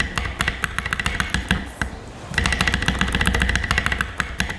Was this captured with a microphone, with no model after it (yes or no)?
yes